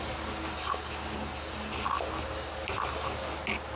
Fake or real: real